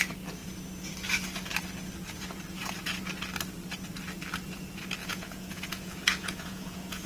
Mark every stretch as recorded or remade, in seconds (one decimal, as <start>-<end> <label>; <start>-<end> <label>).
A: 0.0-5.0 recorded; 5.0-7.1 remade